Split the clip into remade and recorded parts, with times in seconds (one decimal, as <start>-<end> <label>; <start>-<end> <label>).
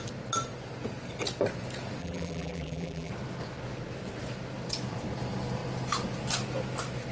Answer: 0.0-2.0 recorded; 2.0-3.1 remade; 3.1-7.1 recorded